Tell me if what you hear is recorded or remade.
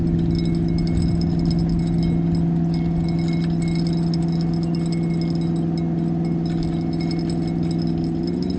recorded